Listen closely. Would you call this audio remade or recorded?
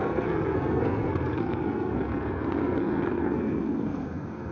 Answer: remade